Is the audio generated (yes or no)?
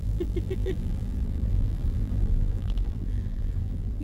yes